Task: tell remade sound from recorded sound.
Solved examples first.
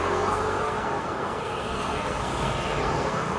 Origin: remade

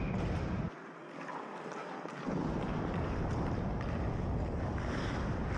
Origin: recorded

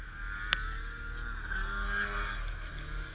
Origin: recorded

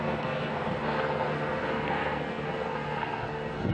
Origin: remade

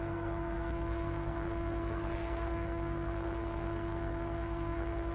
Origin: remade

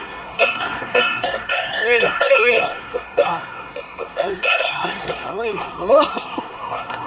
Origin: remade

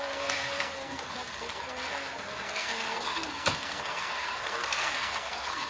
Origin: remade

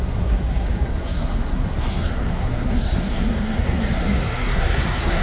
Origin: remade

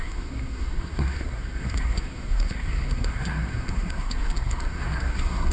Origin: remade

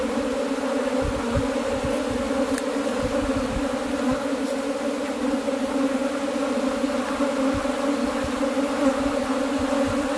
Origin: recorded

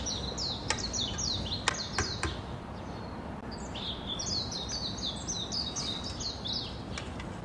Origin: recorded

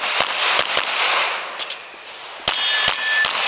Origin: recorded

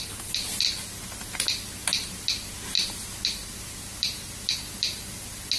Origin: recorded